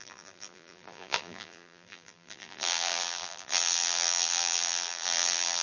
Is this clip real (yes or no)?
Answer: no